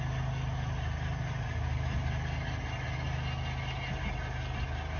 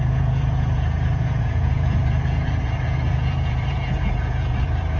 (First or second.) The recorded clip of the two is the first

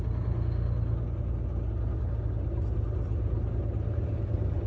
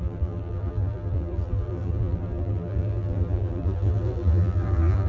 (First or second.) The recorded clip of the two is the first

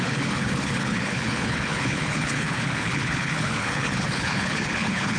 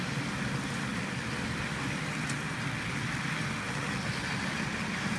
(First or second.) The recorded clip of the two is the second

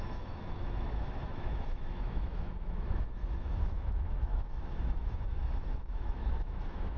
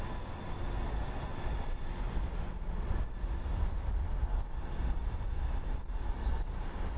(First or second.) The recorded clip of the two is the second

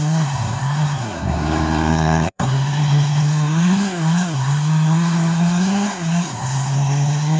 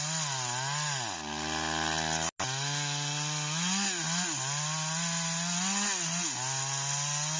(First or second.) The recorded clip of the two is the second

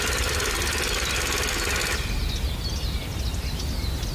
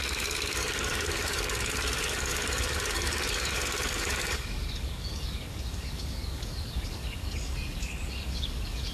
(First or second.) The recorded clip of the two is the first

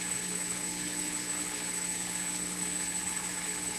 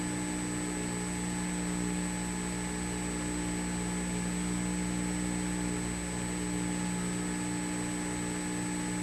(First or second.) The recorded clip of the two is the second